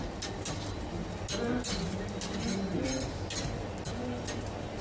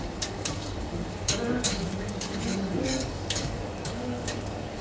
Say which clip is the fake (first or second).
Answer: second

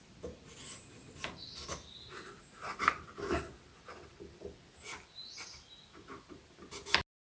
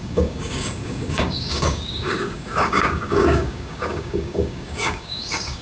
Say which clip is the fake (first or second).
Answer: second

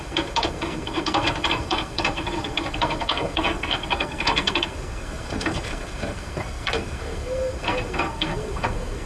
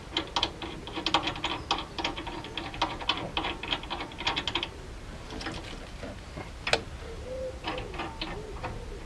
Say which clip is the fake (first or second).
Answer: first